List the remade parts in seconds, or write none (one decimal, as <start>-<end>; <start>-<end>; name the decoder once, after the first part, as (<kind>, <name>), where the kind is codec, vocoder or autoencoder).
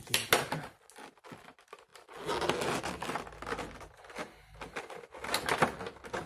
none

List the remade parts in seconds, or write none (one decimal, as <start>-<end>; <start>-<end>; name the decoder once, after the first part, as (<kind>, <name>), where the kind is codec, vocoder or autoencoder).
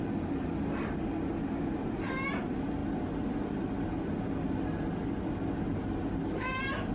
none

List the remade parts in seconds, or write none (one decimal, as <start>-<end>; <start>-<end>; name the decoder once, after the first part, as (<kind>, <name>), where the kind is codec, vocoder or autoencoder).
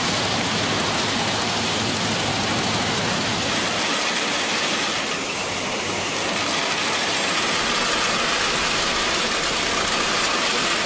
none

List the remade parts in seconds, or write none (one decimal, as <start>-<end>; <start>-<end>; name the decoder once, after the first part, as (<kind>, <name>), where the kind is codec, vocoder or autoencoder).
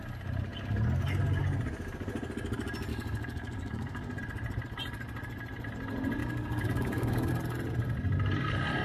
2.9-4.2 (codec, DAC); 6.2-7.3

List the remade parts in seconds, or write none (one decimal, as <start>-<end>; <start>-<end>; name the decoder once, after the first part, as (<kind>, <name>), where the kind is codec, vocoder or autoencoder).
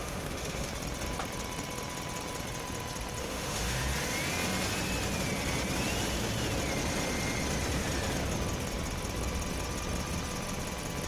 0.0-0.7 (autoencoder, DAC-VAE); 3.2-3.8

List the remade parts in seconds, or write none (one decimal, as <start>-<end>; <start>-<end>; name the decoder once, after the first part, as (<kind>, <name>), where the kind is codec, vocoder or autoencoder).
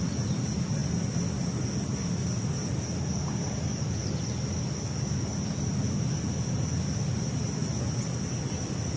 none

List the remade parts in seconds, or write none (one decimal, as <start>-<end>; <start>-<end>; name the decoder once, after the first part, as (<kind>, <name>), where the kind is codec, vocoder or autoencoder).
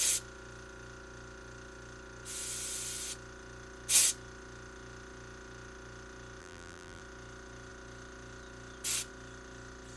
6.4-7.0 (vocoder, BigVGAN v2)